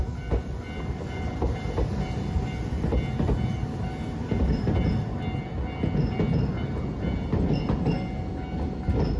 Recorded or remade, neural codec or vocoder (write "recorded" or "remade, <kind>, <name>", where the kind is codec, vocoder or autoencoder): recorded